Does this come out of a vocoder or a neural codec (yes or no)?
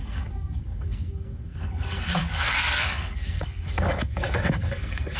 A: yes